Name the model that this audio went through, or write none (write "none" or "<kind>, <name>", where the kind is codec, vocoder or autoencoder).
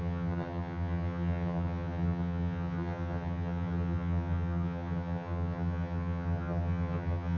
vocoder, HiFi-GAN